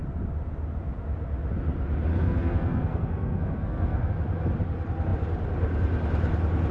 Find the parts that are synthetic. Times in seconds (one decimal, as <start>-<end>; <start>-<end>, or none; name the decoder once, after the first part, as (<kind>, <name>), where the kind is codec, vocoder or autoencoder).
2.1-4.1 (codec, SNAC)